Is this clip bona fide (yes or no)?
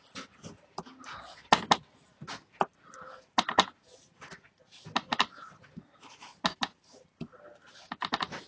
yes